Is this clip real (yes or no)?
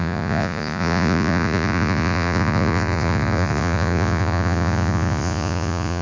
no